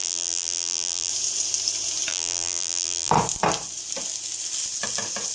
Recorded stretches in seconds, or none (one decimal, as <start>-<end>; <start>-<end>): 1.1-2.1; 3.1-5.3